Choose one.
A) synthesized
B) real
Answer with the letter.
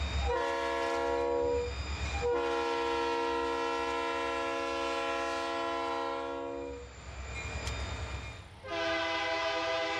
B